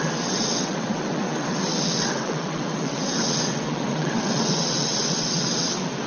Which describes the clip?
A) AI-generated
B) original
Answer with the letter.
A